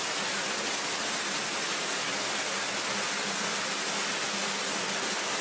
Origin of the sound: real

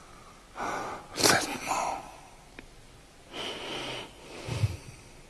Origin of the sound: real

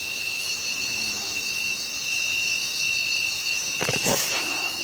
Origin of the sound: fake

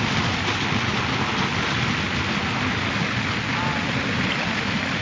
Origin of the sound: real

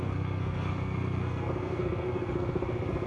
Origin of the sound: fake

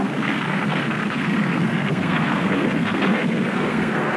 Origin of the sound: fake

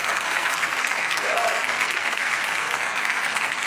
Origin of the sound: fake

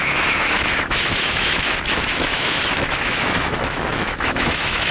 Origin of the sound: fake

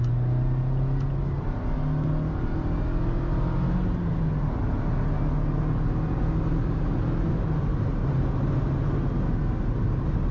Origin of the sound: real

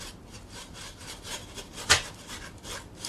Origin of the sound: fake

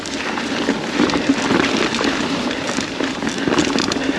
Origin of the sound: real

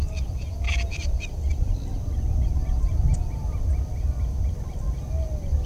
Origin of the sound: real